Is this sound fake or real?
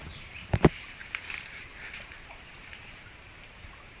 fake